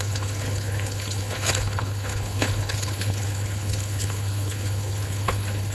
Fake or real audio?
fake